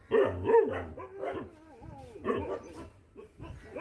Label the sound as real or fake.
real